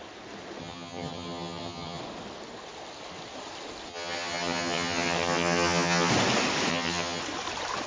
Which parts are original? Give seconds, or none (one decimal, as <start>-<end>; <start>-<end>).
0.0-0.6; 2.0-3.9; 6.1-6.7; 7.2-7.9